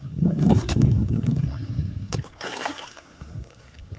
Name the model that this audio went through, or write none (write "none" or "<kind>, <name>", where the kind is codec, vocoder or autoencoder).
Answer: codec, SNAC